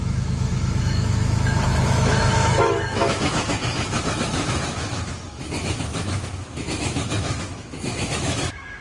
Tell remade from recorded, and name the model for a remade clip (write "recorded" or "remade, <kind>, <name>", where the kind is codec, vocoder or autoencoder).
remade, autoencoder, DAC-VAE